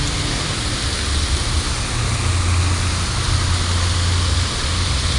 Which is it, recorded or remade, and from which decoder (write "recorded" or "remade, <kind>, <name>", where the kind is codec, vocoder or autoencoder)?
recorded